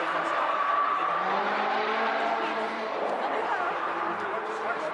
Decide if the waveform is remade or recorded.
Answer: remade